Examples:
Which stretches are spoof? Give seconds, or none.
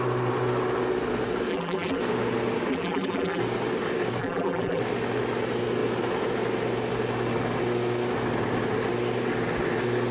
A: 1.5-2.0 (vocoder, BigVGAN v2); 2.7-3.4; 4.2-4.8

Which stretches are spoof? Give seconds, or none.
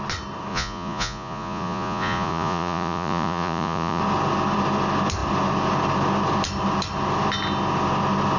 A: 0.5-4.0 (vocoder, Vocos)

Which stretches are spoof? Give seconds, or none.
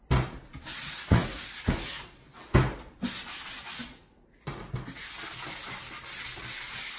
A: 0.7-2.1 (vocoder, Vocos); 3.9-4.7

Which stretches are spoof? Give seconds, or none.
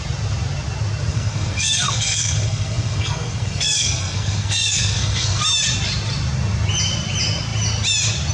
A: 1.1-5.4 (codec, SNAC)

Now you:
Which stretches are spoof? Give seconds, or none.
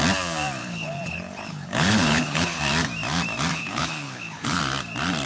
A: 0.6-2.6 (codec, HILCodec); 3.5-4.6